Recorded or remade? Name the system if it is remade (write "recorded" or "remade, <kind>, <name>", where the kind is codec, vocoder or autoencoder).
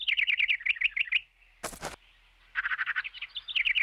recorded